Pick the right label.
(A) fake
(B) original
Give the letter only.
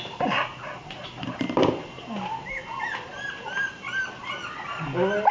B